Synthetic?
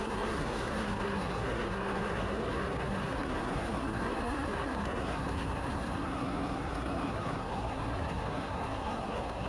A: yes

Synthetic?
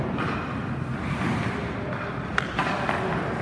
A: no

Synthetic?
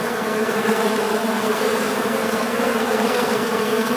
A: yes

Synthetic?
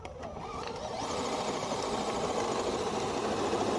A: no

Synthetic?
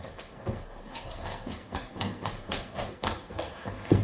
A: yes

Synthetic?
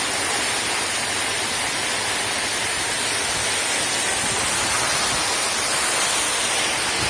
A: no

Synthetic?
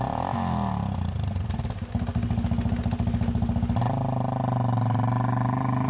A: no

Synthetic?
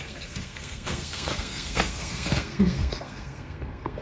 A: yes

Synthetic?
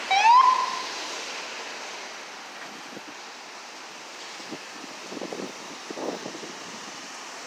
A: no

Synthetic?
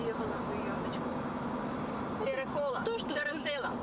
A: no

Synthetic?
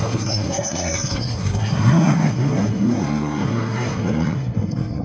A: yes